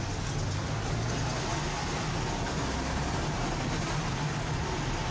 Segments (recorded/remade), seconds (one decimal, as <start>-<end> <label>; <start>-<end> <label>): 0.0-5.1 recorded